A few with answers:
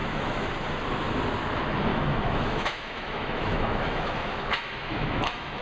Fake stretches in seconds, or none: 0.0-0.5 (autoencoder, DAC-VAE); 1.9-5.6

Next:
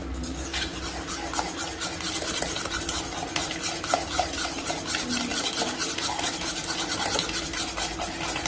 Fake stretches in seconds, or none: none

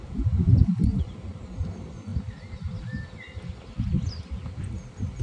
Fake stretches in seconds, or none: none